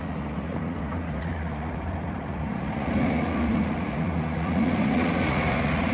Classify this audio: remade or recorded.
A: remade